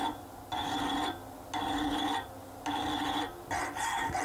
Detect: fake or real real